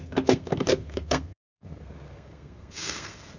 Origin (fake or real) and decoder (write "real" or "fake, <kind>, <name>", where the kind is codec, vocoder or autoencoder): fake, codec, SNAC